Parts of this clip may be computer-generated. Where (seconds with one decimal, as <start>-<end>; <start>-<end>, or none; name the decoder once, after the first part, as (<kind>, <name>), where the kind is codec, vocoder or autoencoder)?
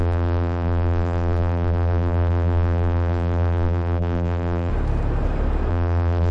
0.0-4.7 (vocoder, BigVGAN v2); 5.7-6.3